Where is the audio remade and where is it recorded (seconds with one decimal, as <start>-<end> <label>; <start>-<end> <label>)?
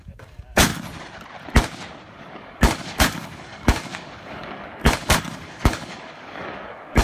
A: 0.0-0.7 remade; 0.7-2.2 recorded; 2.2-7.0 remade